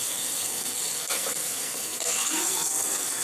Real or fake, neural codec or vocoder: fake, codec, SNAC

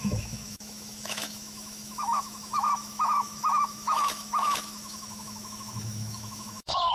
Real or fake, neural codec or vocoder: fake, autoencoder, DAC-VAE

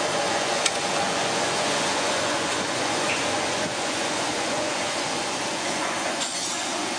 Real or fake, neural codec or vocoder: fake, vocoder, Vocos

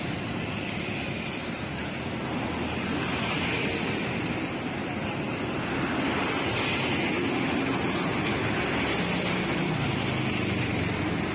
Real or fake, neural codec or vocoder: real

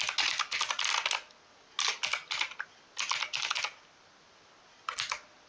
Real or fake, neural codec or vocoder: real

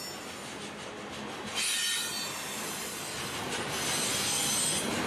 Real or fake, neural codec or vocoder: real